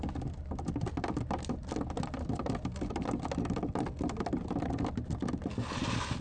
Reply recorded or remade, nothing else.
recorded